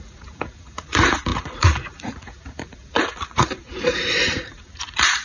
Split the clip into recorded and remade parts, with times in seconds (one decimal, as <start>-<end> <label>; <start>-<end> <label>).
0.0-5.2 remade